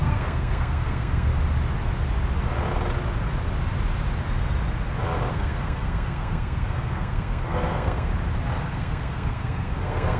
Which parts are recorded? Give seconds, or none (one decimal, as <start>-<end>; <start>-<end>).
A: 1.3-5.3; 8.1-8.6